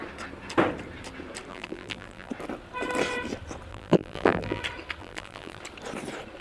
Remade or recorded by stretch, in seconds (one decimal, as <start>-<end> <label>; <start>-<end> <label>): 0.0-1.5 recorded; 1.5-2.3 remade; 2.3-3.7 recorded; 3.7-4.6 remade; 4.6-5.0 recorded; 5.0-5.6 remade; 5.6-6.4 recorded